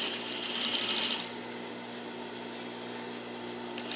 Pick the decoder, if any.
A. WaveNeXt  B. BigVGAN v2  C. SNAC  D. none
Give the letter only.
D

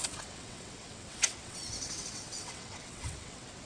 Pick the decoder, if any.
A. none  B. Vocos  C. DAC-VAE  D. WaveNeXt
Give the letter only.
D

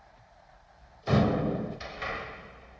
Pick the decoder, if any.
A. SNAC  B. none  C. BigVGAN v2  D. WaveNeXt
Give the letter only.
B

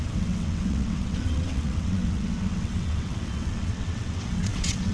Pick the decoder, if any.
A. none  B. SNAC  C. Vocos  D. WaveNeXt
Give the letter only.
D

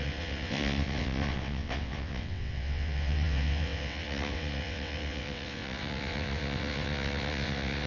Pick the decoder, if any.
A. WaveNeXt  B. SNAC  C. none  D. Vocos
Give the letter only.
A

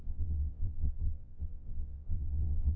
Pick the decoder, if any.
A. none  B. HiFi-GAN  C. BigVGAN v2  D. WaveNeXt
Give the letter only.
D